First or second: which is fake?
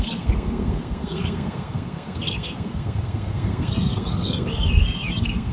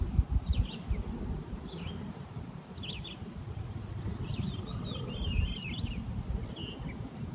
first